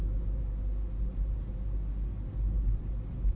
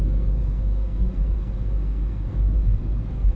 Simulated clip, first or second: second